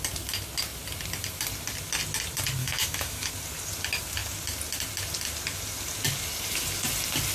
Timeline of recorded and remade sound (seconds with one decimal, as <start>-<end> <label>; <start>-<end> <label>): 0.0-2.6 recorded; 2.6-3.3 remade; 3.3-7.3 recorded